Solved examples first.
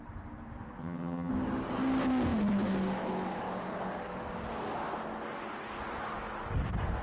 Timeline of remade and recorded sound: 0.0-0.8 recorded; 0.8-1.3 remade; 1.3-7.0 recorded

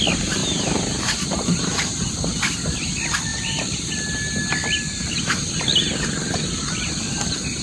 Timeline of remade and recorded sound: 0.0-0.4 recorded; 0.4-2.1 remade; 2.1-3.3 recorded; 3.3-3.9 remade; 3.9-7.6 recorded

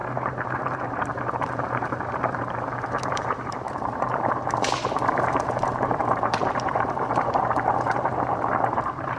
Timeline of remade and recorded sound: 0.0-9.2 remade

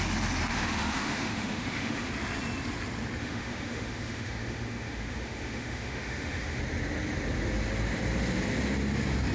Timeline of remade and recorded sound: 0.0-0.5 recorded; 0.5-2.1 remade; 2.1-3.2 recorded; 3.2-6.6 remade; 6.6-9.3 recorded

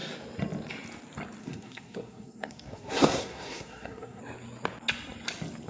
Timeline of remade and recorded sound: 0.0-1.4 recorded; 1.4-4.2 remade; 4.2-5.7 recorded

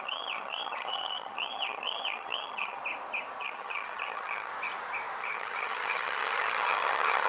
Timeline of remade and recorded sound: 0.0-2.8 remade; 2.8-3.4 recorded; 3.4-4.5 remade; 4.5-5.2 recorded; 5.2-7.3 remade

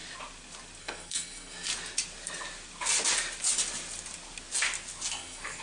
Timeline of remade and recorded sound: 0.0-0.8 recorded; 0.8-1.7 remade; 1.7-5.1 recorded; 5.1-5.6 remade